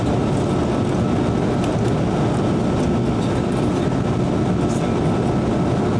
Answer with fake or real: real